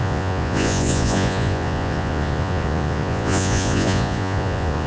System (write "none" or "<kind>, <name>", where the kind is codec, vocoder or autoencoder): vocoder, Vocos